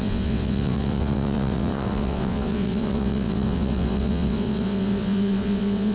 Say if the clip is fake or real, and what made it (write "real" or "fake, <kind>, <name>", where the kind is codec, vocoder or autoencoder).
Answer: fake, vocoder, WaveNeXt